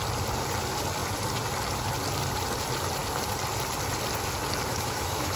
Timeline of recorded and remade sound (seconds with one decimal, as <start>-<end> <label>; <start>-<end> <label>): 0.0-4.7 recorded; 4.7-5.4 remade